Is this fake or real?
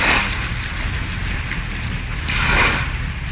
real